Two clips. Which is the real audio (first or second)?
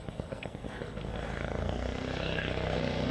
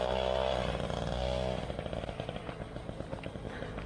second